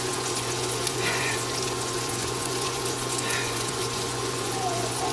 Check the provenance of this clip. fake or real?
fake